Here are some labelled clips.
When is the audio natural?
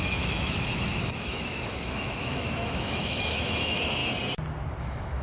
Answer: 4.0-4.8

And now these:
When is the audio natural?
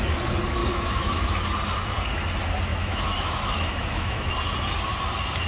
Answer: 0.0-0.6; 1.3-2.7; 4.3-5.5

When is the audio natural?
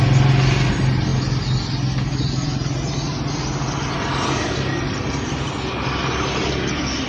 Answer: 0.0-7.1